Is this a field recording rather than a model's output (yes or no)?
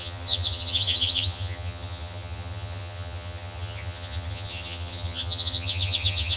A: no